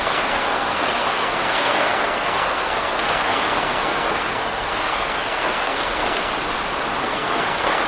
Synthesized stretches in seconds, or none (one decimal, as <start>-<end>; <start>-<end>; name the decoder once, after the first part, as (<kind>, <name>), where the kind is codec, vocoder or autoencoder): 0.0-6.3 (codec, SNAC); 7.0-7.9